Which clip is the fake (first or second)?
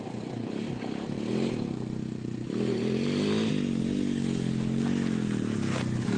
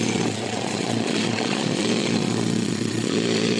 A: second